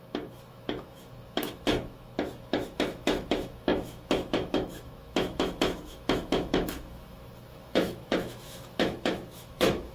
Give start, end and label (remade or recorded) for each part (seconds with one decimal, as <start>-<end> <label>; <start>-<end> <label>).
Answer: 0.0-9.9 remade